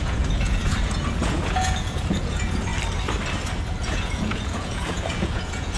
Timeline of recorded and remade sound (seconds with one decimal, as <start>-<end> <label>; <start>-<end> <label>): 0.0-2.7 remade; 2.7-3.8 recorded; 3.8-5.8 remade